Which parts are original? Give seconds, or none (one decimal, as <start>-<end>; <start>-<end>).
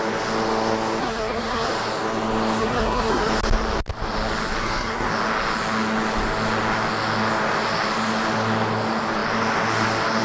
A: 0.0-1.0; 1.7-2.6; 3.3-4.6; 5.1-10.2